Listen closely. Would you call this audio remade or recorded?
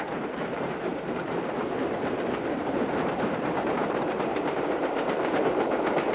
remade